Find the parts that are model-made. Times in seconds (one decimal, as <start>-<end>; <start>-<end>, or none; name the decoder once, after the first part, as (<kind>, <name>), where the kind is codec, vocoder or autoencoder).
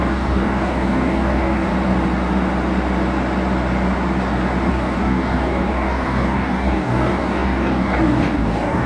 0.0-1.7 (codec, DAC); 4.7-8.9